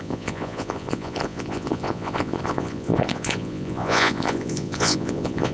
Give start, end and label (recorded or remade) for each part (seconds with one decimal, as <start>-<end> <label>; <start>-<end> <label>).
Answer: 0.0-5.5 remade